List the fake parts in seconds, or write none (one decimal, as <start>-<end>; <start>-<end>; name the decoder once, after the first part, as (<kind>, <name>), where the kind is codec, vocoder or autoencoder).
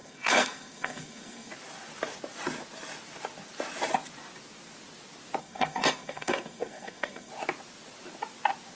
0.0-1.5 (codec, SNAC); 5.4-7.3